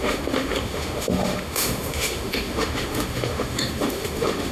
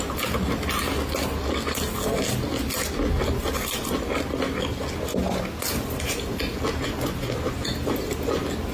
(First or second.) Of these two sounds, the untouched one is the second